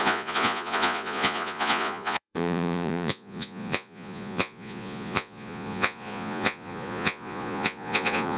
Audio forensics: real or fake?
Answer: fake